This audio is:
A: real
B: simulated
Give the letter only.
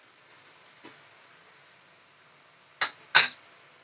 A